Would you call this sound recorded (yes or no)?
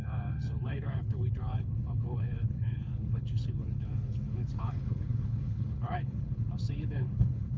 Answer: no